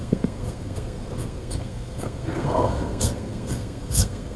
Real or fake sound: fake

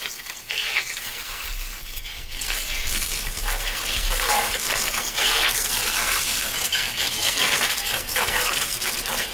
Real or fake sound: fake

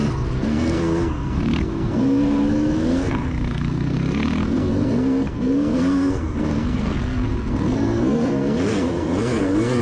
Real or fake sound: fake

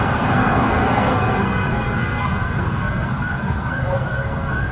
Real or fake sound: fake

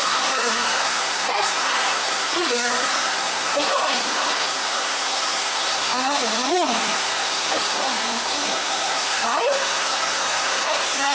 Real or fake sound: fake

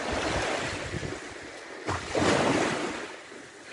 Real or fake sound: real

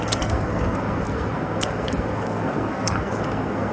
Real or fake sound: fake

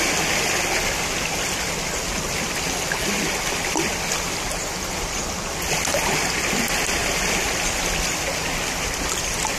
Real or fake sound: real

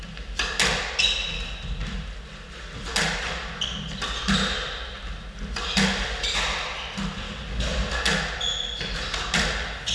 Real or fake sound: real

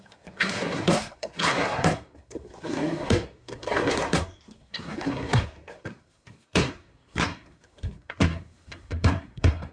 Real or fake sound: fake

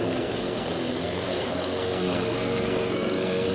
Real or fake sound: fake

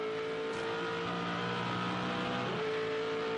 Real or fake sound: real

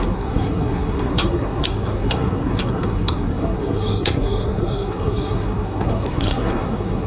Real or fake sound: fake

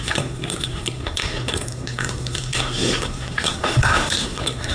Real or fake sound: fake